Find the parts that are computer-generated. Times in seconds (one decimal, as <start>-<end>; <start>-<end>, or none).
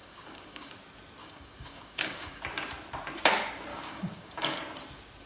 0.0-0.7; 1.2-2.4; 3.7-4.6